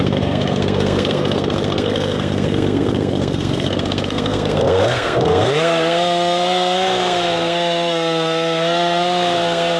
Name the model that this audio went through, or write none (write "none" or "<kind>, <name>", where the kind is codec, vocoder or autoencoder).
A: codec, SNAC